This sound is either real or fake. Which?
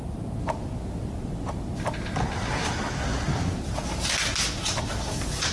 real